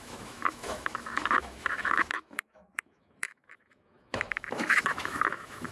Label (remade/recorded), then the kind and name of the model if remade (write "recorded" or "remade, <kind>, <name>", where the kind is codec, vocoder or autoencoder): remade, autoencoder, DAC-VAE